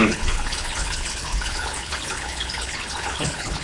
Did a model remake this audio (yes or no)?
yes